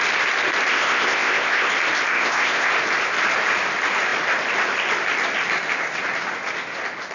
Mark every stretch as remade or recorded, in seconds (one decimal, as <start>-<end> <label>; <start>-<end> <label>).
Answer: 0.0-0.7 recorded; 0.7-1.7 remade; 1.7-2.1 recorded; 2.1-2.7 remade; 2.7-7.1 recorded